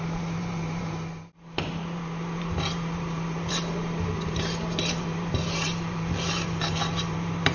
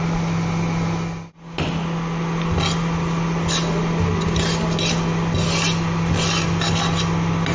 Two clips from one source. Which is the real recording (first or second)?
second